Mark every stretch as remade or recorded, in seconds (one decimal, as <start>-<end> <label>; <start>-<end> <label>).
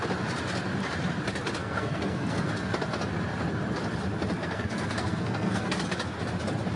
0.0-1.6 recorded; 1.6-2.7 remade; 2.7-4.4 recorded; 4.4-5.7 remade; 5.7-6.8 recorded